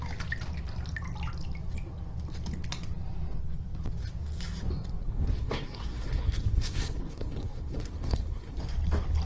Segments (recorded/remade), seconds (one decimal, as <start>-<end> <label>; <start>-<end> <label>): 0.0-5.0 recorded; 5.0-8.6 remade; 8.6-9.3 recorded